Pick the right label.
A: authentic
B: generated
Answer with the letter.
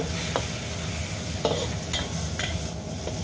A